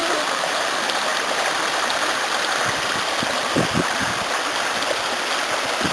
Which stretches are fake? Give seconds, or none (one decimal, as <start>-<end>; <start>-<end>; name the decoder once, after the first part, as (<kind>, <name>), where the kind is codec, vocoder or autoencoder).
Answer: none